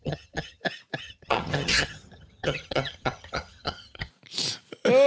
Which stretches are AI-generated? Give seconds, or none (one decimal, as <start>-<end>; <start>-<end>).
0.0-0.6; 1.0-4.1